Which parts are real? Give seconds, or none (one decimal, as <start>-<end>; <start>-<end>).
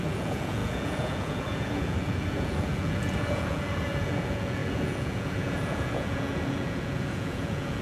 none